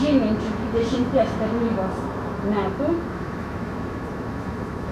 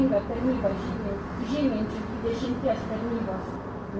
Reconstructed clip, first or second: first